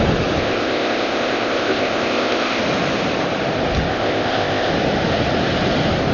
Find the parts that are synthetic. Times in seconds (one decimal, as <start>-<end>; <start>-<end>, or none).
0.4-2.6; 3.9-4.7